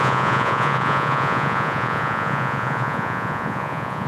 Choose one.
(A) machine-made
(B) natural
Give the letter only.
A